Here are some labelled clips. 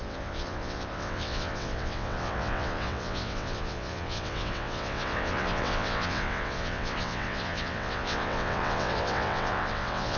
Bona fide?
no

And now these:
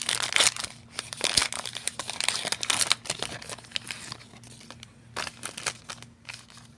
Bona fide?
yes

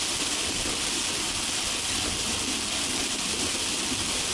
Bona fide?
yes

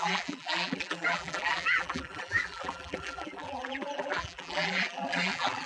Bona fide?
no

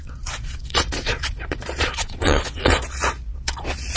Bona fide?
no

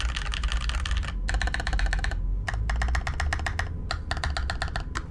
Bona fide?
yes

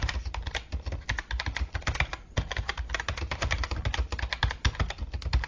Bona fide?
yes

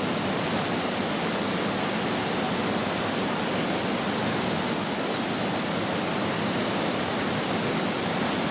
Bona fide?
yes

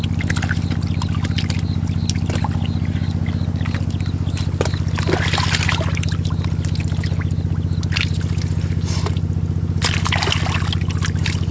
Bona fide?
yes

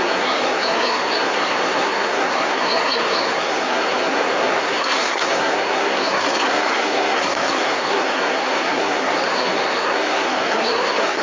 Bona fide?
no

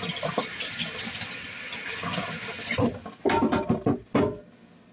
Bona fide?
yes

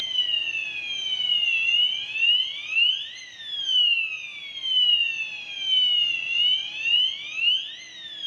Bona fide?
yes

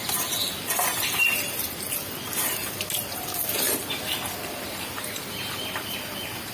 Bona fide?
yes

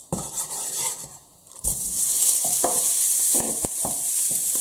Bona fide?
no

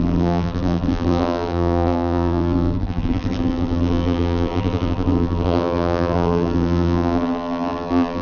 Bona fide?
no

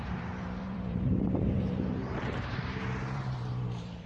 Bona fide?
no